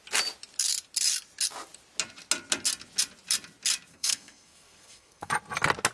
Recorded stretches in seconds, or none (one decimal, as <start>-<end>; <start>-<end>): 0.0-3.9; 5.3-5.9